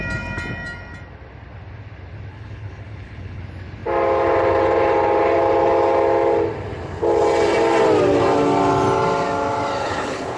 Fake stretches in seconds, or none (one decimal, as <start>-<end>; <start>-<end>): 2.3-3.4; 9.8-10.4